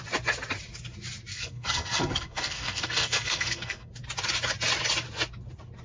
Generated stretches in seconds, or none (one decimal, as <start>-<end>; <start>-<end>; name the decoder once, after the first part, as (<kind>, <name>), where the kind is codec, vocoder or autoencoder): 1.3-3.9 (codec, SNAC)